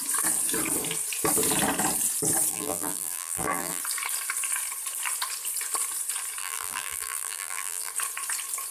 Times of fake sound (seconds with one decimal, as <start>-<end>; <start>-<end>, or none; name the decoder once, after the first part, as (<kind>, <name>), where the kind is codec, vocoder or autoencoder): 2.5-3.8 (vocoder, BigVGAN v2); 6.4-7.9